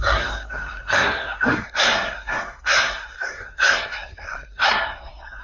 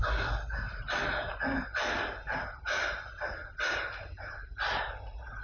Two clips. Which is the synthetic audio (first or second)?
first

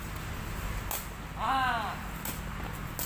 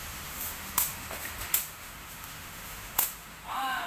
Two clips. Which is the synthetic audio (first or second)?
second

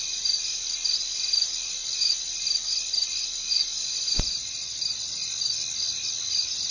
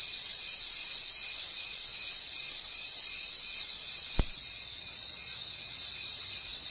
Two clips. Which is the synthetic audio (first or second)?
second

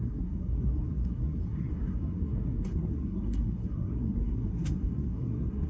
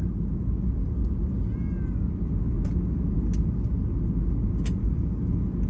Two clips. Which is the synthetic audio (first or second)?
first